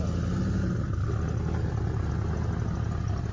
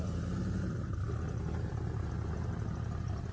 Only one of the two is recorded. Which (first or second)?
first